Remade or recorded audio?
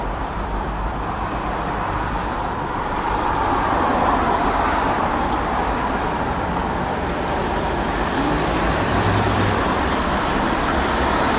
remade